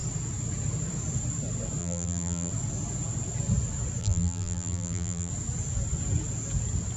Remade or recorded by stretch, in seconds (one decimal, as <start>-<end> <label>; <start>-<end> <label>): 0.0-1.8 recorded; 1.8-2.5 remade; 2.5-4.0 recorded; 4.0-5.3 remade; 5.3-7.0 recorded